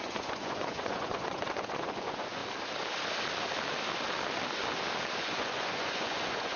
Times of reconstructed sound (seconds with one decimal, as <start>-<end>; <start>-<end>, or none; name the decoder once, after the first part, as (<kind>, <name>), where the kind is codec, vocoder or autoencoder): 0.0-2.4 (vocoder, Vocos); 5.2-6.6